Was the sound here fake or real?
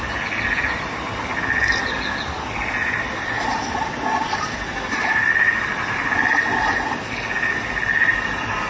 real